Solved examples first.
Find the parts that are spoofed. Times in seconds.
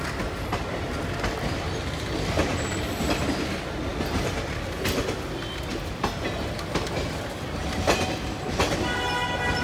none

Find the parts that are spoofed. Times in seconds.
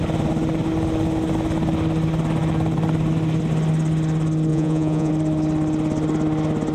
4.5-5.1 (vocoder, Vocos)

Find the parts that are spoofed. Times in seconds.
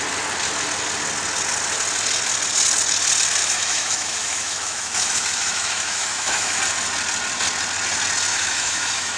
3.4-6.6 (autoencoder, DAC-VAE); 8.3-9.2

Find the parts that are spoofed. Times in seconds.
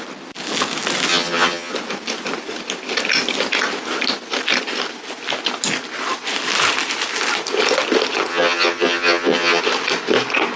1.1-1.7 (vocoder, HiFi-GAN); 8.3-9.6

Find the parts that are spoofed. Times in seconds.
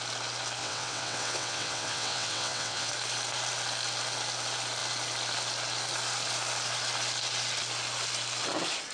0.6-2.9 (vocoder, WaveNeXt)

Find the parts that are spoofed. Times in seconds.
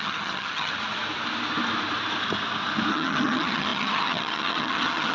0.0-0.7 (vocoder, HiFi-GAN); 2.9-5.1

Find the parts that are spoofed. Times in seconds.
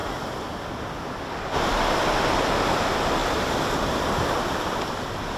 0.0-0.6 (vocoder, BigVGAN v2); 3.2-4.9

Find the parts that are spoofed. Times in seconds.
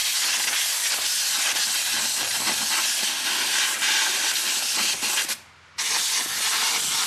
none